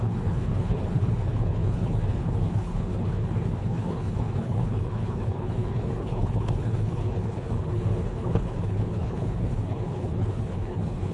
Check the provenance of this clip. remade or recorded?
remade